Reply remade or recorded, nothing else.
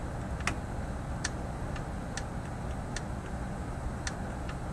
recorded